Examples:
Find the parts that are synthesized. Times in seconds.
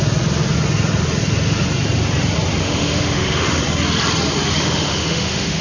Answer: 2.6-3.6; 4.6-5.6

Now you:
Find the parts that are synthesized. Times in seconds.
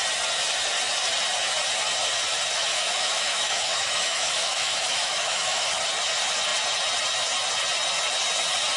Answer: 2.7-5.7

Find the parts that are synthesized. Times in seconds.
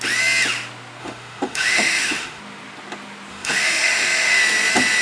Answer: 1.0-2.4; 3.3-4.4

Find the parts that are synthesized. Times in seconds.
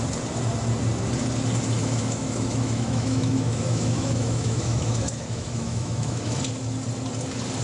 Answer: 1.8-6.4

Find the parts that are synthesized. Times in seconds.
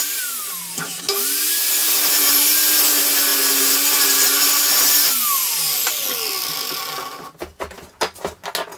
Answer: none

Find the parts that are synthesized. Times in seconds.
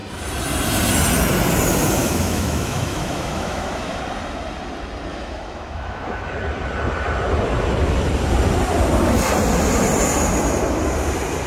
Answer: 2.0-4.0; 5.1-6.3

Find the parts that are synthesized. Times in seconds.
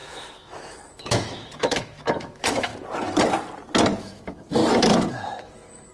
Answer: 0.0-2.7; 4.0-4.6; 5.1-5.9